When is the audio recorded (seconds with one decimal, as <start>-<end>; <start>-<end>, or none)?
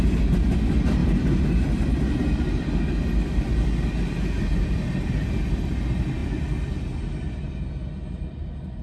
0.0-8.8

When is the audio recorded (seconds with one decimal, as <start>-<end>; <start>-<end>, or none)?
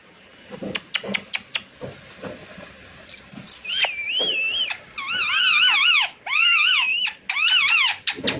1.1-5.8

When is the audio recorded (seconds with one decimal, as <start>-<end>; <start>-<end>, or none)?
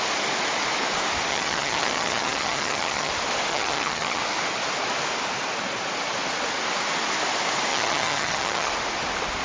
0.0-1.3; 3.1-3.5; 4.2-7.7; 8.7-9.4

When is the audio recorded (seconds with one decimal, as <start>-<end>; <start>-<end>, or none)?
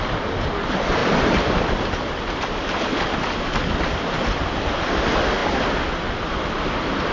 0.0-7.1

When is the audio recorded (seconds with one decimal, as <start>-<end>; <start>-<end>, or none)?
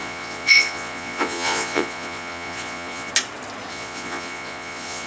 3.1-3.7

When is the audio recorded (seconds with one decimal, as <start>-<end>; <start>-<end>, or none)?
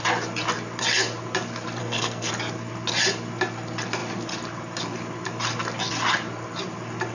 0.0-1.8; 2.3-7.1